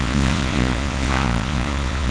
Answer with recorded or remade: remade